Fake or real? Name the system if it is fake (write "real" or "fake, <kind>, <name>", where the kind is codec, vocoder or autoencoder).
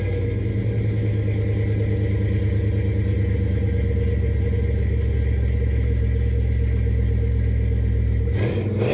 real